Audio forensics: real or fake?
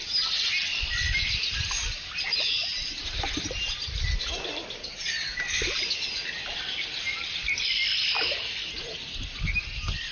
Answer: real